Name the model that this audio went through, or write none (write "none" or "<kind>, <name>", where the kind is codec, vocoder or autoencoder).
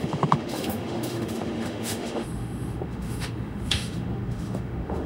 autoencoder, DAC-VAE